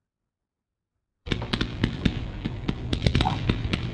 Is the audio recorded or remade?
remade